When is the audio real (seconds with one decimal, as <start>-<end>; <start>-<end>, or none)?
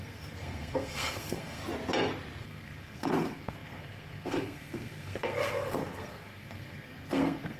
1.6-2.4